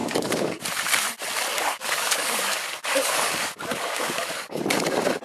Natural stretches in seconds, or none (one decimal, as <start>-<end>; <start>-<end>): 0.6-1.5; 4.6-5.2